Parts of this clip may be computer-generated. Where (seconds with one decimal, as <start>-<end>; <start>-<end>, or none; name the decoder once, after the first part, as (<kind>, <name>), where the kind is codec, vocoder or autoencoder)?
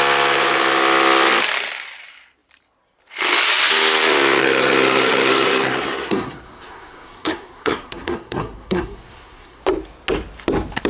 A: 4.4-9.6 (codec, SNAC)